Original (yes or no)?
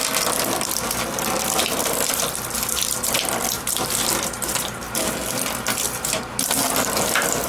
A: no